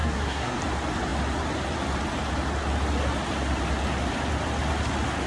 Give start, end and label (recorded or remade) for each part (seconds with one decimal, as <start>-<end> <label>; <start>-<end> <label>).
0.0-0.6 remade; 0.6-5.3 recorded